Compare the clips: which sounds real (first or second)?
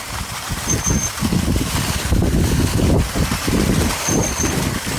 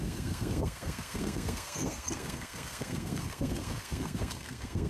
first